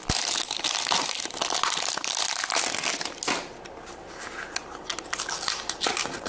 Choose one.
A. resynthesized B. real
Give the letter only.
B